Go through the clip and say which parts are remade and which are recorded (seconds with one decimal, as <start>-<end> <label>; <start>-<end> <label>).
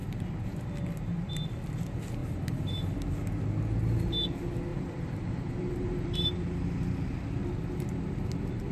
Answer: 0.0-0.6 remade; 0.6-2.2 recorded; 2.2-3.2 remade; 3.2-4.7 recorded; 4.7-6.4 remade; 6.4-8.7 recorded